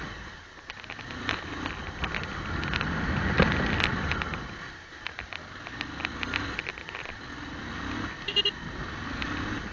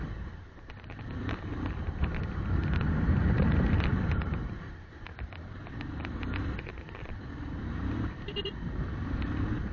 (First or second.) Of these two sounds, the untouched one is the first